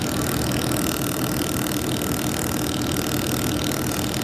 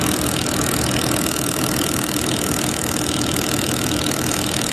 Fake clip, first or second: second